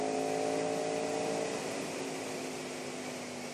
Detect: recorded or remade recorded